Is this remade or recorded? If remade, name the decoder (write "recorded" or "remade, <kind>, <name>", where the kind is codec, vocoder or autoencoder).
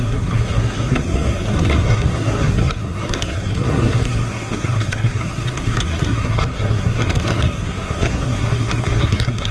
remade, codec, SNAC